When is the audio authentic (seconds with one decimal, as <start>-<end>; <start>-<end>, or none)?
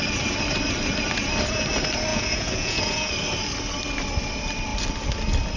0.0-2.1; 3.1-5.6